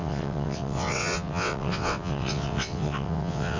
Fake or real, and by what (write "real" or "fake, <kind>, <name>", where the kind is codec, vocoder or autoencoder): fake, vocoder, WaveNeXt